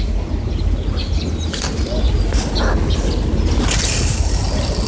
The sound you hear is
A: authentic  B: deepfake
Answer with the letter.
A